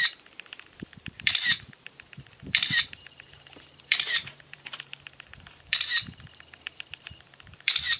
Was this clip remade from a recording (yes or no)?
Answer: yes